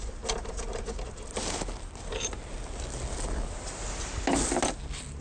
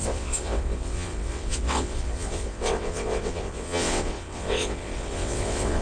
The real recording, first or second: first